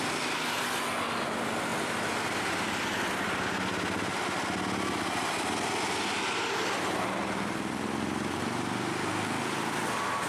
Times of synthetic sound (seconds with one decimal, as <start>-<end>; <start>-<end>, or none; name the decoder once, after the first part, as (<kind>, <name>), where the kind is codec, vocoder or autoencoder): none